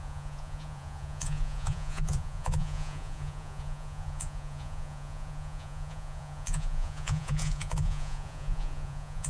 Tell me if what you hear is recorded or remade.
remade